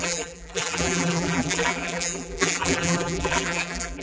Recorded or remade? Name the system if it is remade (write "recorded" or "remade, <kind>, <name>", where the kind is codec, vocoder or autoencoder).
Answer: remade, vocoder, BigVGAN v2